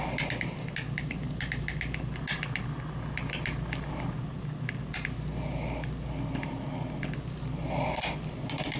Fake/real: real